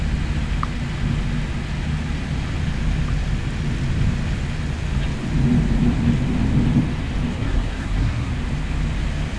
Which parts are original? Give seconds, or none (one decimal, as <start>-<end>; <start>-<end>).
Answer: 0.0-7.3; 8.3-9.4